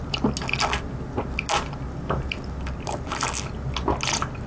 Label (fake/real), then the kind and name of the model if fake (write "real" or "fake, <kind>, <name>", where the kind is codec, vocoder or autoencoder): real